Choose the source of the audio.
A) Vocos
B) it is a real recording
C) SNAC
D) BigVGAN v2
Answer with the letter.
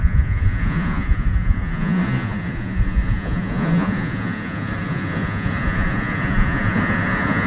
A